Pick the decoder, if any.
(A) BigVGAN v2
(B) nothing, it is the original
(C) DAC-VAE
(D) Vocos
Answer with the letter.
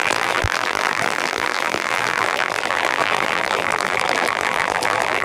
A